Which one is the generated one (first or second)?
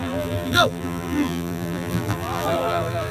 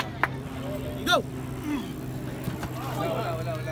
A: first